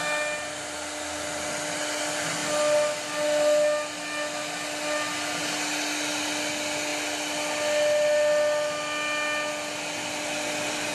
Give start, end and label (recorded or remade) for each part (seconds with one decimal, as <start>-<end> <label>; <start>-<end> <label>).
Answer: 0.0-10.9 recorded